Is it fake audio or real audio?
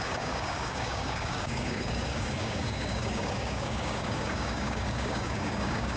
fake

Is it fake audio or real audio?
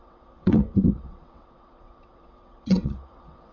fake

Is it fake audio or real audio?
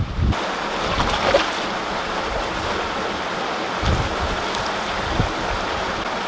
real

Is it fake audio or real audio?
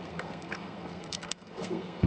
fake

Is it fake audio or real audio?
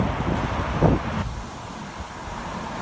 real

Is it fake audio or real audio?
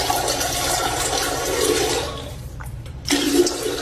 fake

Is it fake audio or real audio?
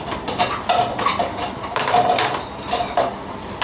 real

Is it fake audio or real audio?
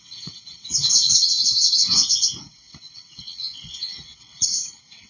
fake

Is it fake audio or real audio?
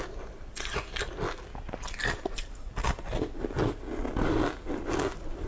real